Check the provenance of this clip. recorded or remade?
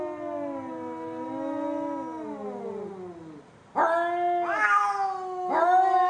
recorded